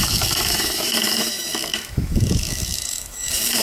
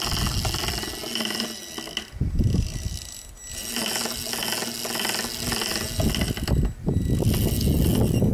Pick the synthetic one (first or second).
first